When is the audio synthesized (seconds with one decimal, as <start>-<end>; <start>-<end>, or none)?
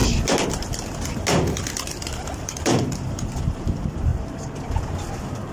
1.4-4.1